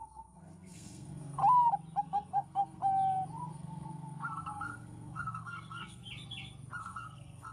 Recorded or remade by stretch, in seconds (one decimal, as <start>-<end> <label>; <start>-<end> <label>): 0.0-1.4 remade; 1.4-2.0 recorded; 2.0-2.8 remade; 2.8-3.5 recorded; 3.5-6.0 remade; 6.0-6.8 recorded; 6.8-7.5 remade